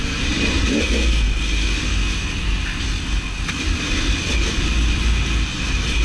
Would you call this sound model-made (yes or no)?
no